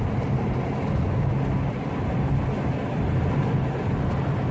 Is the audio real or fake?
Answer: real